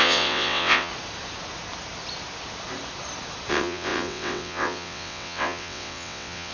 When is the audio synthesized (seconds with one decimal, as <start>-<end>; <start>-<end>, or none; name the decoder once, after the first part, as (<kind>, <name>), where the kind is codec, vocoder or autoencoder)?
0.0-0.9 (vocoder, WaveNeXt); 3.5-6.5

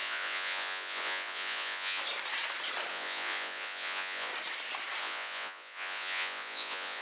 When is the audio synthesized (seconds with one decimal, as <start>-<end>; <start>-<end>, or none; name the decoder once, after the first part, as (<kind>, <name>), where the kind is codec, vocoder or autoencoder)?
0.0-2.0 (vocoder, Vocos); 2.9-4.3; 5.0-7.0

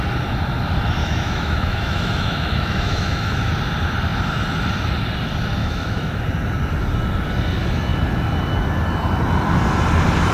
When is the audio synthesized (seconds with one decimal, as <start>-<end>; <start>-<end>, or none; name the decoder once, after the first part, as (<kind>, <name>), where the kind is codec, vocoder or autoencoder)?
1.0-3.5 (autoencoder, DAC-VAE); 5.6-6.2

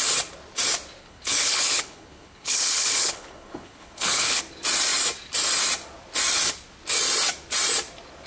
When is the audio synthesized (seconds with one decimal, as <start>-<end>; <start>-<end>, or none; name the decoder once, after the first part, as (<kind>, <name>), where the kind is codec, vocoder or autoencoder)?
1.0-4.4 (codec, HILCodec)

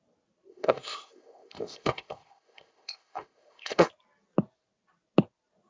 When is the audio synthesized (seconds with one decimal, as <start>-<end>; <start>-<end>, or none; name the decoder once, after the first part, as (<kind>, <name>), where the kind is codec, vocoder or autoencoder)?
0.5-3.9 (codec, ZipCodec)

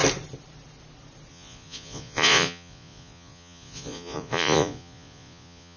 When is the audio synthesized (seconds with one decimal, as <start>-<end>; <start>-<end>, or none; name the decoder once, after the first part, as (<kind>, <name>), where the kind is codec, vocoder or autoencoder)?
1.3-5.8 (vocoder, Vocos)